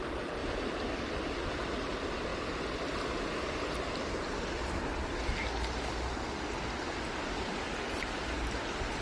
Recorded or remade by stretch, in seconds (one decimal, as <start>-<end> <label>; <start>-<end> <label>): 0.0-0.4 recorded; 0.4-1.1 remade; 1.1-9.0 recorded